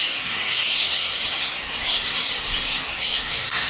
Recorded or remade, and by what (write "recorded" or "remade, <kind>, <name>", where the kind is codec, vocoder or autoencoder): remade, codec, SNAC